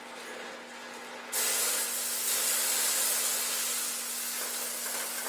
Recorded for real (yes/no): yes